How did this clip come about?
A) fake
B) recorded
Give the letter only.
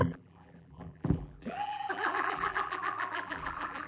A